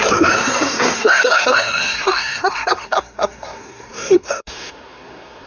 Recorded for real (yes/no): no